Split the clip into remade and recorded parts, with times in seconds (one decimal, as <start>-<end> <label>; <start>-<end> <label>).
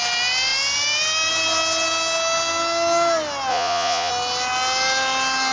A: 0.0-3.5 recorded; 3.5-4.1 remade; 4.1-5.5 recorded